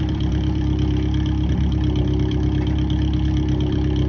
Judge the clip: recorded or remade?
remade